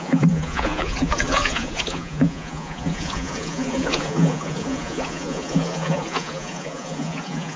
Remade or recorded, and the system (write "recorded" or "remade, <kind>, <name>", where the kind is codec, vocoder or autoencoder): remade, vocoder, Vocos